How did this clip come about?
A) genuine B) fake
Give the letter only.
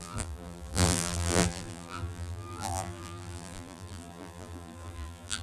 B